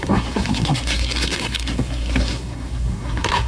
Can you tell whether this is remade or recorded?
remade